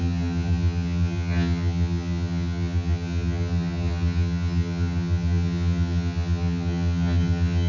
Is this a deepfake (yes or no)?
yes